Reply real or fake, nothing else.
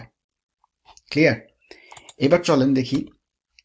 real